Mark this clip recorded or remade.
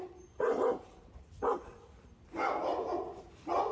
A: recorded